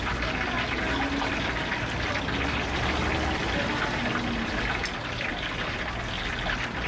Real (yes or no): yes